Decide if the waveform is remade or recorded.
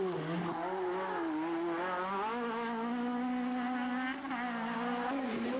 recorded